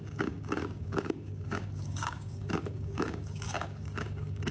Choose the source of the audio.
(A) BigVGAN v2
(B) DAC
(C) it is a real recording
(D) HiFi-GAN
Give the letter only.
B